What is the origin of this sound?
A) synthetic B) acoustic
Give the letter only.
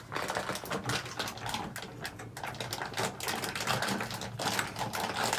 B